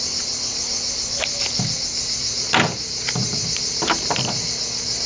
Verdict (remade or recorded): recorded